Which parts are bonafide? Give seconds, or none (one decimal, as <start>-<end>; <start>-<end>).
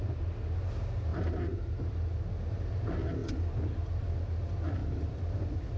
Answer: 0.0-3.2; 4.1-4.8